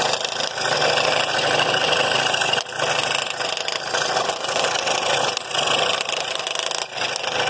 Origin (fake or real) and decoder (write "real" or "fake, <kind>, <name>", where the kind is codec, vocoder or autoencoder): real